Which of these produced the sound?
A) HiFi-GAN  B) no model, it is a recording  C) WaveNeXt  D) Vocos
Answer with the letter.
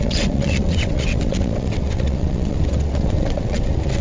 C